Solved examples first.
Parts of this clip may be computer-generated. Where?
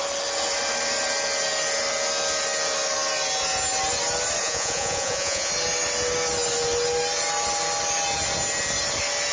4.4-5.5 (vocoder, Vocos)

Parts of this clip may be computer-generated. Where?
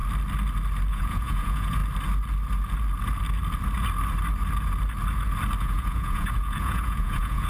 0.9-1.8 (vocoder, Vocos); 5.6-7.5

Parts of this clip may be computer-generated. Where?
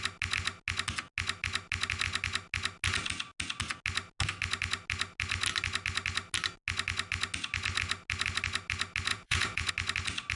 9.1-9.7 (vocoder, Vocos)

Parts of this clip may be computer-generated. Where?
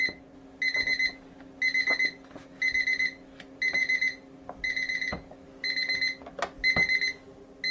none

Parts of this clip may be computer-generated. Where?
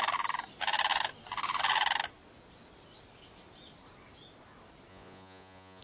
4.9-5.8 (vocoder, Vocos)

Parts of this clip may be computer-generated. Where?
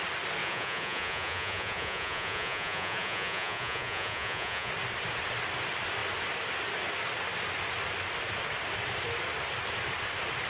0.4-4.7 (vocoder, Vocos)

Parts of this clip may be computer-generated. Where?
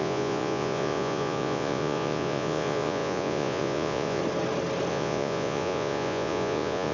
0.0-4.2 (vocoder, Vocos); 4.9-6.9